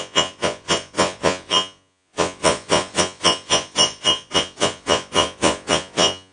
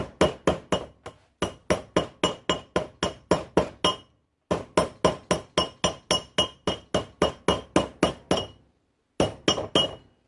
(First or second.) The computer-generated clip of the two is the first